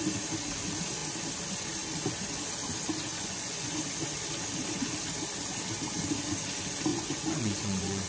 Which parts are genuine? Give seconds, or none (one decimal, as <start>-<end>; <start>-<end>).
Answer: 0.0-3.1; 3.8-6.9